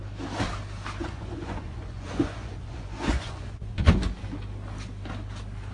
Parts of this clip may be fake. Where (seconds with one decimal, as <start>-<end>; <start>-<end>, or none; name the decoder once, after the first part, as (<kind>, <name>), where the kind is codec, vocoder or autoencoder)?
1.0-3.9 (vocoder, Vocos)